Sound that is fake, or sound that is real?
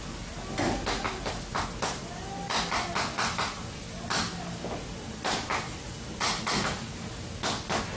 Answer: real